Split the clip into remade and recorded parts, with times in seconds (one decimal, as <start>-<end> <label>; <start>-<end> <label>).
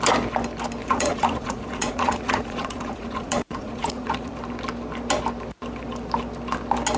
0.0-0.8 recorded; 0.8-4.3 remade; 4.3-7.0 recorded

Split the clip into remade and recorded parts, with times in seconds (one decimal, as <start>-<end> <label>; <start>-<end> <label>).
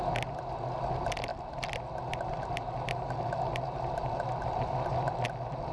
0.0-5.7 recorded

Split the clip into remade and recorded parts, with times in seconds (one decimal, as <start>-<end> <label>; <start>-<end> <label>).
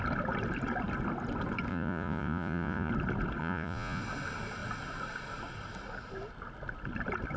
0.0-1.7 recorded; 1.7-2.9 remade; 2.9-3.4 recorded; 3.4-4.0 remade; 4.0-7.4 recorded